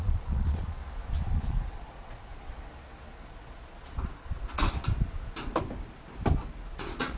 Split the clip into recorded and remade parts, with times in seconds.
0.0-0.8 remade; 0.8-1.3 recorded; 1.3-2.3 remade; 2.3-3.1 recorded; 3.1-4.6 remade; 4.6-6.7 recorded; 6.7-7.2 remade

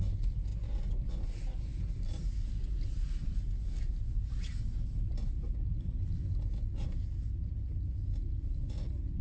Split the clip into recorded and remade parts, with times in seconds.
0.0-9.2 recorded

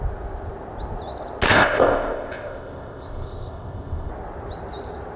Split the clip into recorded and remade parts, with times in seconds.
0.0-1.5 recorded; 1.5-4.1 remade; 4.1-5.2 recorded

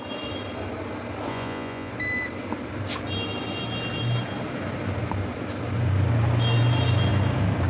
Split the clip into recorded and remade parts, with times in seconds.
0.0-1.3 recorded; 1.3-1.9 remade; 1.9-7.7 recorded

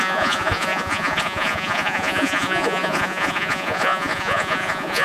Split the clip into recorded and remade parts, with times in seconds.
0.0-5.0 remade